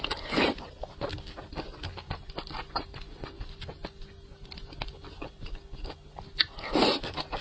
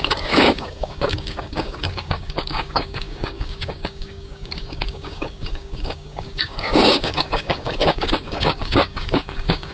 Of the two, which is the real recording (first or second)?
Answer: first